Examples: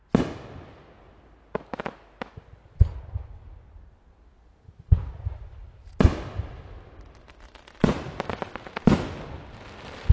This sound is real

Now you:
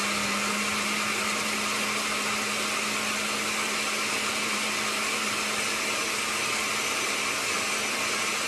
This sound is real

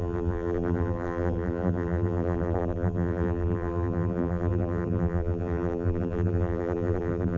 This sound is fake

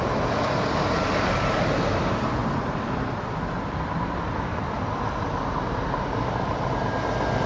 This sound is real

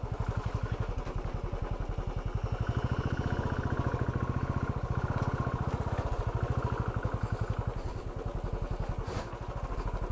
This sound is real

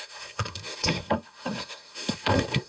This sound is fake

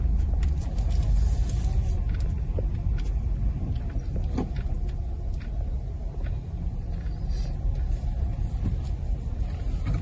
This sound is real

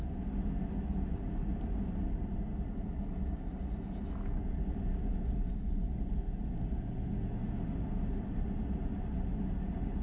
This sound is real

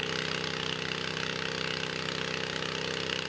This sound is real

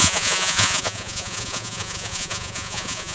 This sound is fake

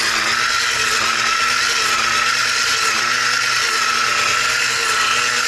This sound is real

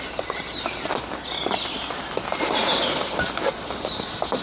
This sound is real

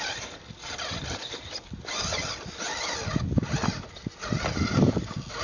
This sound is real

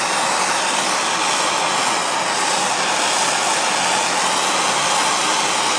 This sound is real